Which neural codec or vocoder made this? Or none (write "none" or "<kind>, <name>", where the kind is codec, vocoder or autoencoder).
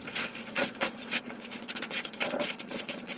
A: vocoder, Vocos